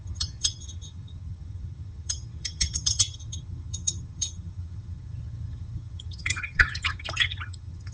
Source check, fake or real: fake